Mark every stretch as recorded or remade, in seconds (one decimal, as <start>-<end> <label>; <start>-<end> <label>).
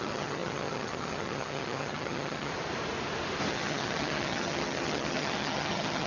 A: 0.0-2.5 remade; 2.5-3.5 recorded; 3.5-6.1 remade